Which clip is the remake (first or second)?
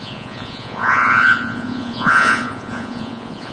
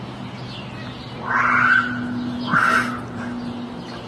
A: first